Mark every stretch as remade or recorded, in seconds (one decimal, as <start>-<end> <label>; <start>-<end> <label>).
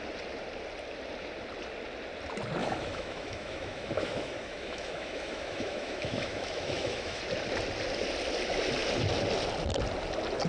0.0-2.6 recorded; 2.6-7.2 remade; 7.2-10.5 recorded